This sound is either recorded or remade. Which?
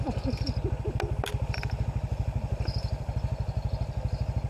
recorded